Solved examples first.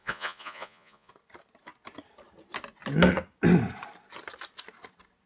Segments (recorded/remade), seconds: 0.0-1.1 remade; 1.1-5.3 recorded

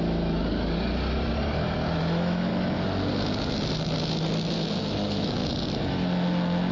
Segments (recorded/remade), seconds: 0.0-0.4 remade; 0.4-2.0 recorded; 2.0-2.5 remade; 2.5-4.8 recorded; 4.8-5.4 remade; 5.4-6.7 recorded

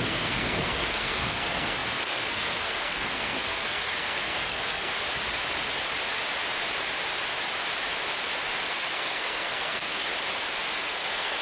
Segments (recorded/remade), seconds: 0.0-4.9 remade; 4.9-8.7 recorded; 8.7-10.1 remade; 10.1-10.8 recorded; 10.8-11.4 remade

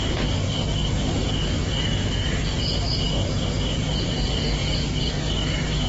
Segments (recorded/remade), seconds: 0.0-5.9 recorded